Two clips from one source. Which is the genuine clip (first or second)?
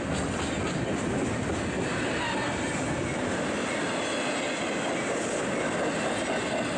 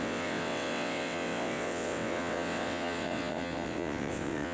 first